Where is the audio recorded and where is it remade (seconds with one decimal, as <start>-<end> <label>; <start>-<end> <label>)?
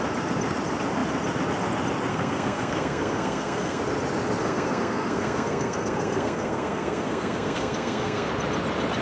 0.0-2.1 recorded; 2.1-3.8 remade; 3.8-4.4 recorded; 4.4-8.3 remade; 8.3-9.0 recorded